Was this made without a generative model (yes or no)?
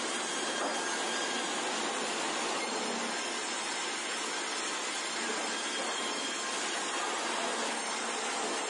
yes